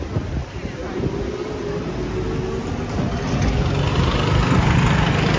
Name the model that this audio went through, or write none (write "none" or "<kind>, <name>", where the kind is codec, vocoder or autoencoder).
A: none